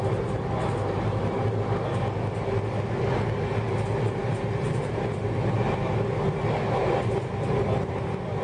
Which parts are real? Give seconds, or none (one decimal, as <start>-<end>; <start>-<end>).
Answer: 0.0-8.4